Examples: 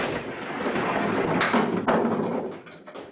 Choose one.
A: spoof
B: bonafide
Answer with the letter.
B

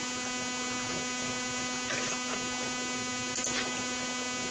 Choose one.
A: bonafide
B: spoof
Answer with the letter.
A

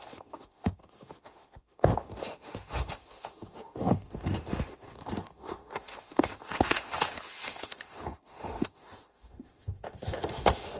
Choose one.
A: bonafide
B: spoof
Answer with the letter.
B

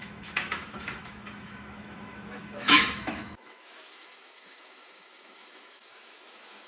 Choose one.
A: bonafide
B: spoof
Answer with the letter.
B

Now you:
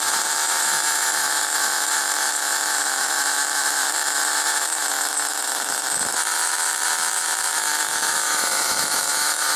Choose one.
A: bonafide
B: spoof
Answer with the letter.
B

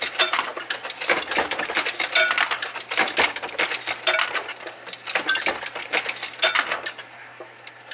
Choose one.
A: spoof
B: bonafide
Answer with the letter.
B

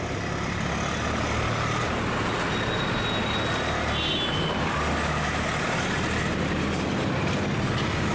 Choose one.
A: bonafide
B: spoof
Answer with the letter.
A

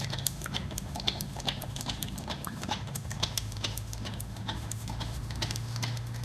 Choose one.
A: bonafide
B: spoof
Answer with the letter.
B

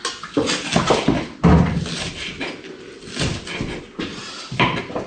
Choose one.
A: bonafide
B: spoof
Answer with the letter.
A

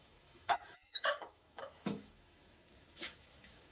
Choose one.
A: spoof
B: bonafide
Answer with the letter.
A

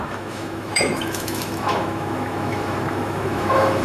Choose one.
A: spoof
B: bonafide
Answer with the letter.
A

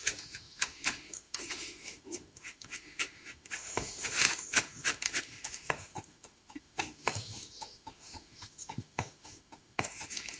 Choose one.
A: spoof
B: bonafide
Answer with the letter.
A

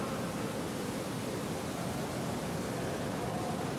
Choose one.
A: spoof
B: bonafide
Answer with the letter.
B